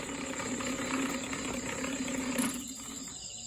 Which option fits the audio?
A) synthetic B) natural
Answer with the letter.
B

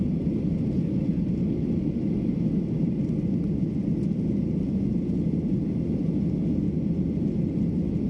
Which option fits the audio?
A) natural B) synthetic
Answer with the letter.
A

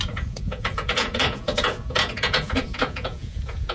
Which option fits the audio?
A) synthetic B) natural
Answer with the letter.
A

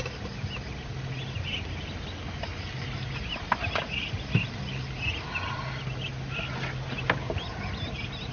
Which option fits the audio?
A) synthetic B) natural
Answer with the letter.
B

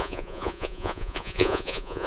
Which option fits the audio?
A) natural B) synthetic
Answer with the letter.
B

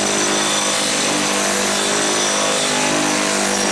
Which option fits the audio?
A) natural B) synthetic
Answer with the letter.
A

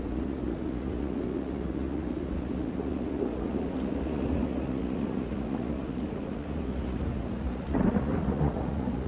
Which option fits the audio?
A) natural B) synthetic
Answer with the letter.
B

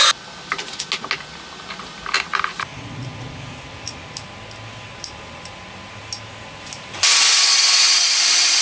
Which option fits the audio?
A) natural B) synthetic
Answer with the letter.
A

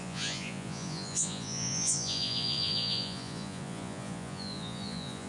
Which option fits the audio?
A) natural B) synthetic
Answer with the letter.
B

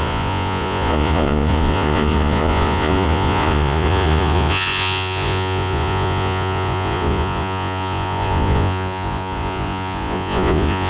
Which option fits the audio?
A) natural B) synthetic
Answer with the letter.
B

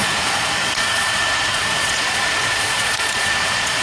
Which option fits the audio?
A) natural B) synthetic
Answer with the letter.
B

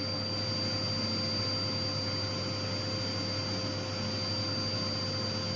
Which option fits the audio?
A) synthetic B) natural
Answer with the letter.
B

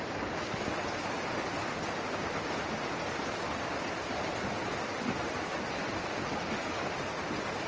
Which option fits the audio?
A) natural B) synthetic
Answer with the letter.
A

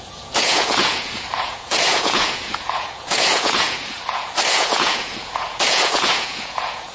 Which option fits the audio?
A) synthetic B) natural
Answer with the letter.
A